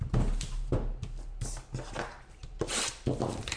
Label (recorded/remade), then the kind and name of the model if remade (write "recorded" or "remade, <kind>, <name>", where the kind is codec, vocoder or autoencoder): recorded